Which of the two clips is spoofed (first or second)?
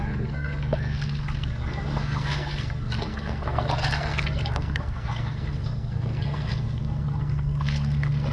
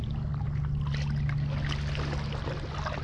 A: first